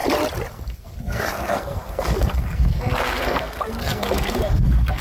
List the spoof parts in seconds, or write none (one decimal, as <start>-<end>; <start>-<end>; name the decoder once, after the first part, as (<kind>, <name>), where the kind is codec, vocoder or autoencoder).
0.5-5.0 (codec, SNAC)